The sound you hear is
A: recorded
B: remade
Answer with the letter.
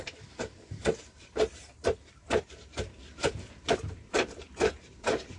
B